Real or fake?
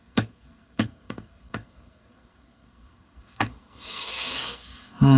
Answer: fake